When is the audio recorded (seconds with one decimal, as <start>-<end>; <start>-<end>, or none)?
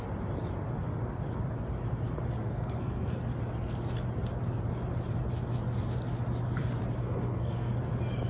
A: 0.0-2.4; 3.2-7.0; 7.7-8.3